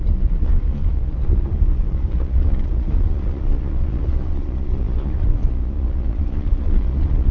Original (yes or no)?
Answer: no